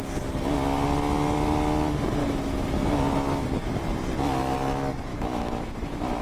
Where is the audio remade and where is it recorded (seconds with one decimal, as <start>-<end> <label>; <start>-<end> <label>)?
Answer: 0.0-2.2 recorded; 2.2-2.7 remade; 2.7-5.1 recorded; 5.1-6.2 remade